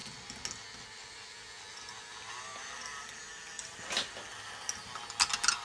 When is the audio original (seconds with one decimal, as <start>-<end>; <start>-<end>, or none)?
0.0-5.6